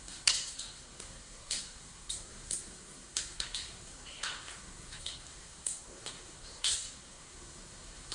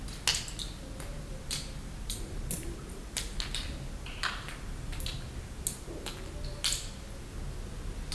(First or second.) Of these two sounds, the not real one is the first